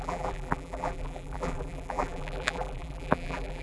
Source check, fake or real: fake